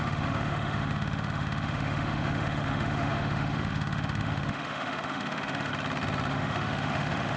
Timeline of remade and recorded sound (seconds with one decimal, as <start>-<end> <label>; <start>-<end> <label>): 0.0-5.7 remade; 5.7-6.3 recorded; 6.3-7.4 remade